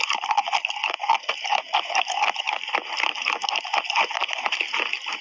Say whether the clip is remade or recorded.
recorded